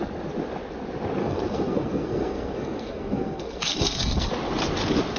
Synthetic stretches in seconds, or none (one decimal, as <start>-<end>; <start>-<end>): 1.2-4.3